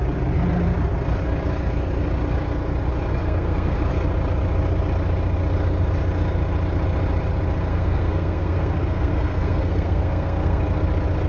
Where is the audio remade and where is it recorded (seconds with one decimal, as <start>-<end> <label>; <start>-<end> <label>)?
0.0-3.1 recorded; 3.1-3.9 remade; 3.9-7.7 recorded; 7.7-10.6 remade; 10.6-11.3 recorded

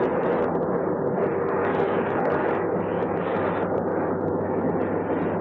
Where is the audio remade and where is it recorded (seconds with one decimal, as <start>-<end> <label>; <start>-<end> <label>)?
0.0-1.6 recorded; 1.6-3.4 remade; 3.4-3.9 recorded; 3.9-4.7 remade; 4.7-5.4 recorded

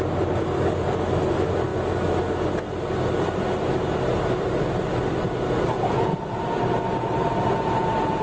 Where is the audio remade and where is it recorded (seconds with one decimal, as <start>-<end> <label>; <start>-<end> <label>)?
0.0-8.2 recorded

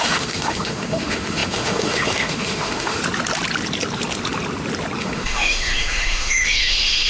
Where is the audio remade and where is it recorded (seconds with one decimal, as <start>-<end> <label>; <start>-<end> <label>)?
0.0-3.0 remade; 3.0-5.0 recorded; 5.0-7.1 remade

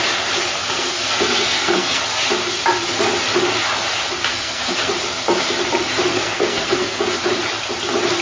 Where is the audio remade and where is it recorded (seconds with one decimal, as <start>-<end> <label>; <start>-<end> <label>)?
0.0-0.6 recorded; 0.6-2.0 remade; 2.0-4.3 recorded; 4.3-4.9 remade; 4.9-6.1 recorded; 6.1-7.0 remade; 7.0-8.2 recorded

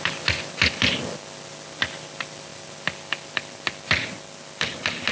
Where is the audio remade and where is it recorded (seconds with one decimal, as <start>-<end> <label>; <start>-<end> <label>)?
0.0-5.1 recorded